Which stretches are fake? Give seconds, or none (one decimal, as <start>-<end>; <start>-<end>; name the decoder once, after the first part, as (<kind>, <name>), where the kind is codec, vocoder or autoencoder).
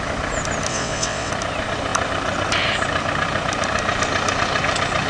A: 0.7-1.3 (vocoder, WaveNeXt)